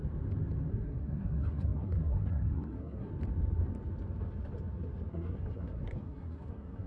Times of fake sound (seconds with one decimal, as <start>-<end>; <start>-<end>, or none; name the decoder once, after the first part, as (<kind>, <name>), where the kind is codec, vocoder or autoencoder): 0.7-3.1 (codec, SNAC); 5.1-6.9